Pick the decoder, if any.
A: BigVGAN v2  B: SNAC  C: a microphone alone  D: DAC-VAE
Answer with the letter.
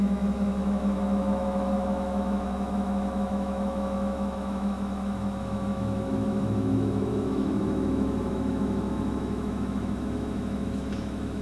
D